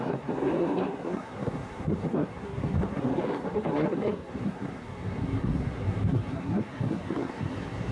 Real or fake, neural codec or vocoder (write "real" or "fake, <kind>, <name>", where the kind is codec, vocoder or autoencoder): fake, codec, SNAC